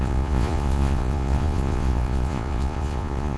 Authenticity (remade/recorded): remade